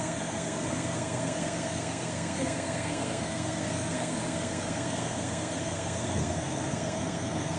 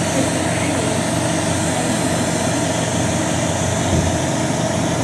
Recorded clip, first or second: second